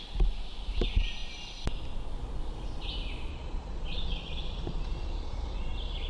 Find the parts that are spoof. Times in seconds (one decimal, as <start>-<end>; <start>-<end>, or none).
3.3-6.1